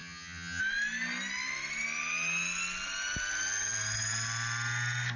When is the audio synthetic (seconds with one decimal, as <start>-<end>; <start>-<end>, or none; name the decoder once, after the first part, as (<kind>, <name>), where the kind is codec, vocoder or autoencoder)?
0.0-0.6 (vocoder, HiFi-GAN)